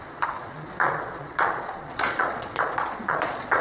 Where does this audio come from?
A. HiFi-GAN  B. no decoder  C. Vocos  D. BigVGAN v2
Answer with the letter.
C